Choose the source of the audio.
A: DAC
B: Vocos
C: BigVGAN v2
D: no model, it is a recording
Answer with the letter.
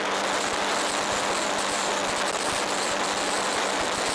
D